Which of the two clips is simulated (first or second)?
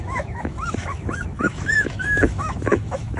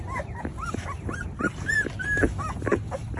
first